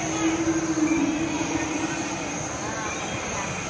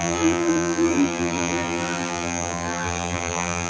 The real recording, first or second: first